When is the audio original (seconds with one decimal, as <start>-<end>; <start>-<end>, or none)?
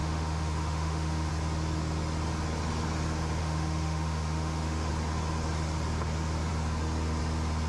1.3-3.4; 4.9-7.7